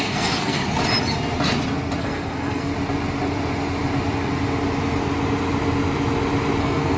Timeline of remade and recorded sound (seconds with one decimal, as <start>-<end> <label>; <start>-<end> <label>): 0.0-0.6 remade; 0.6-2.0 recorded; 2.0-2.7 remade; 2.7-6.6 recorded; 6.6-7.0 remade